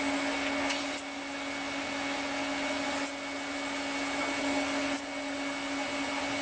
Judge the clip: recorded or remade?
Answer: recorded